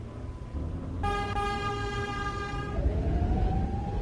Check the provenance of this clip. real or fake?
real